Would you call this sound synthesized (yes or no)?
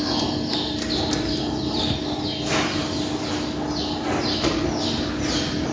no